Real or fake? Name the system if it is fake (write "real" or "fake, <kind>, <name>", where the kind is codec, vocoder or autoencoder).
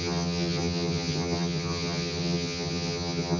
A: fake, vocoder, HiFi-GAN